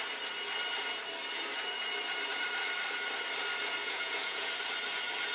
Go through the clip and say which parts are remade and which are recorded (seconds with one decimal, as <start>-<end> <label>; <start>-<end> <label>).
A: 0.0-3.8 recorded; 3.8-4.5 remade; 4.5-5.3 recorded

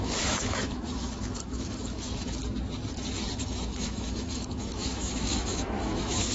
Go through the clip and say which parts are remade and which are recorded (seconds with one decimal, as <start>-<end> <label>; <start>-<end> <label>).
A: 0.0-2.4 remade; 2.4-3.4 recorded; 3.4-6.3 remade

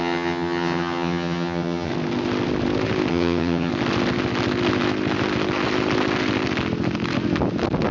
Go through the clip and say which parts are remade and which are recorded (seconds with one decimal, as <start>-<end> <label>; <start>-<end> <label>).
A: 0.0-1.9 remade; 1.9-3.1 recorded; 3.1-3.7 remade; 3.7-7.9 recorded

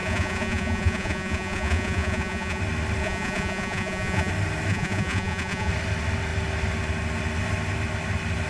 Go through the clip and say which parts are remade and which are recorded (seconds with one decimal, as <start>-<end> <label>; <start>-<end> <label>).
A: 0.0-2.6 remade; 2.6-3.0 recorded; 3.0-4.3 remade; 4.3-4.7 recorded; 4.7-5.7 remade; 5.7-8.5 recorded

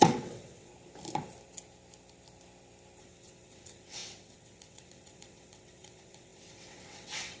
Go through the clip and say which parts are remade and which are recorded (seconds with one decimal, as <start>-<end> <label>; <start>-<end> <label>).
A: 0.0-0.7 remade; 0.7-3.0 recorded; 3.0-7.4 remade

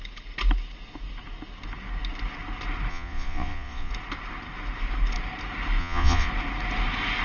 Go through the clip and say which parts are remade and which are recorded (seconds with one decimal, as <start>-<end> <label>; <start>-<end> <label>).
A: 0.0-2.9 recorded; 2.9-3.9 remade; 3.9-5.8 recorded; 5.8-6.3 remade; 6.3-7.2 recorded

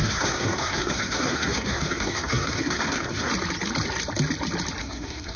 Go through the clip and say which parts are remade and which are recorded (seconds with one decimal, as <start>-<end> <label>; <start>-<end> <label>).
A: 0.0-3.3 remade; 3.3-4.8 recorded; 4.8-5.4 remade